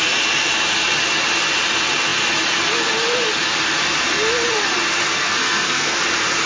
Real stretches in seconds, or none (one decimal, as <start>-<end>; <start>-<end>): 0.0-5.1; 6.0-6.5